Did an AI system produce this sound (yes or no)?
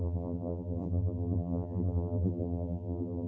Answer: yes